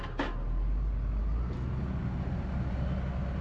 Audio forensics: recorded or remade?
recorded